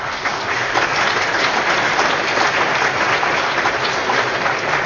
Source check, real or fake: real